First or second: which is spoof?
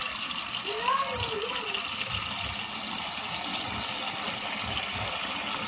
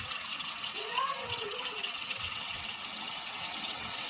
second